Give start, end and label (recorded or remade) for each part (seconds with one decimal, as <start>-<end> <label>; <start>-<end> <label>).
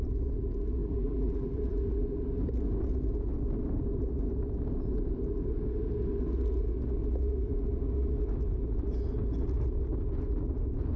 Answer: 0.0-0.8 recorded; 0.8-1.6 remade; 1.6-11.0 recorded